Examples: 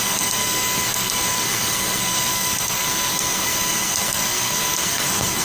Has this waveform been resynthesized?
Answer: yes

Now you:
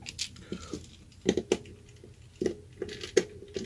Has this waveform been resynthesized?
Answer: no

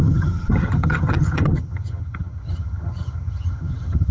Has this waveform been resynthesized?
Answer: yes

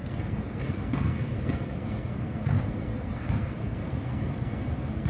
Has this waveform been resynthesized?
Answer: yes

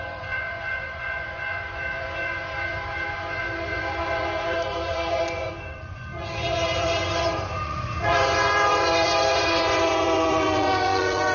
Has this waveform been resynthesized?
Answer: yes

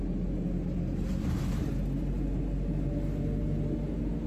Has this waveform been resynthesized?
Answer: no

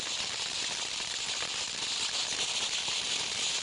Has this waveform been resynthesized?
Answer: no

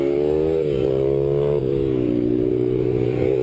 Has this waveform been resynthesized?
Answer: yes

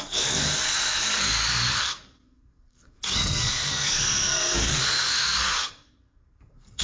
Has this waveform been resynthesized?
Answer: yes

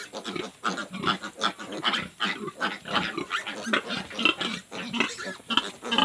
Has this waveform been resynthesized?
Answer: no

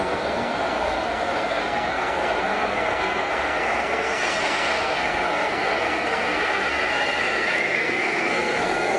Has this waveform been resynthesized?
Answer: yes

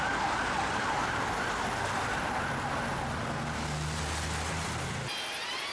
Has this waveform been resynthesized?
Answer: no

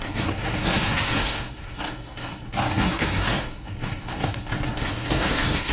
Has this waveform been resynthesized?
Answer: yes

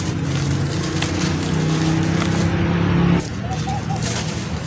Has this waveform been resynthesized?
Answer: no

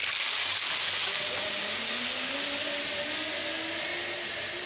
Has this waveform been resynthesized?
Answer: no